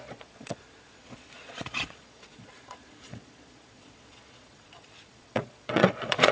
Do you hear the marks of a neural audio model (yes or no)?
yes